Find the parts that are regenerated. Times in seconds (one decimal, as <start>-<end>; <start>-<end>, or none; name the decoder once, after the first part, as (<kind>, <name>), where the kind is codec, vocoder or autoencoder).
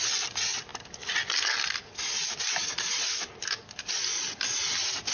none